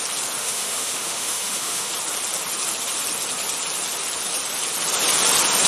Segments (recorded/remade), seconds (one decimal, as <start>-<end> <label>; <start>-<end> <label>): 0.0-0.4 recorded; 0.4-1.9 remade; 1.9-5.7 recorded